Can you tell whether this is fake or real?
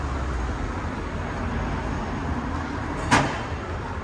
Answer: real